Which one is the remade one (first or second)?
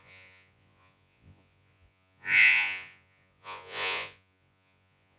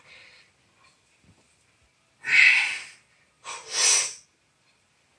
first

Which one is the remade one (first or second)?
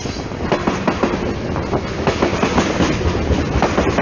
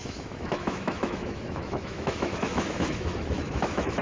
second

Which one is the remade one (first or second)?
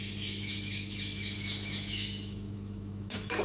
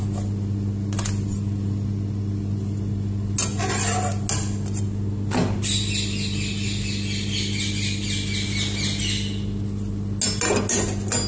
first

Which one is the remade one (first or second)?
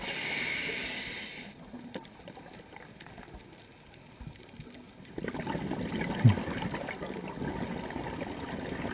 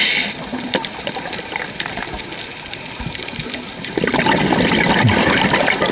second